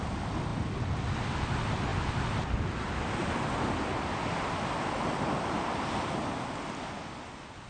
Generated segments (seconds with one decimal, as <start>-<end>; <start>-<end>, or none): none